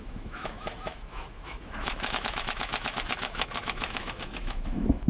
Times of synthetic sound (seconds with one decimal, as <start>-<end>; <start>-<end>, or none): 0.0-5.1